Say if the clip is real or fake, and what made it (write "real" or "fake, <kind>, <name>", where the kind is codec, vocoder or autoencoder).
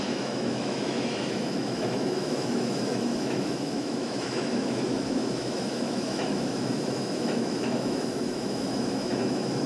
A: fake, autoencoder, DAC-VAE